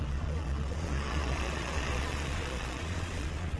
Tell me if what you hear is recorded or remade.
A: remade